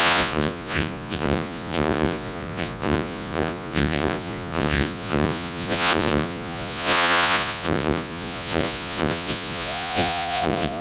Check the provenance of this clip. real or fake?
fake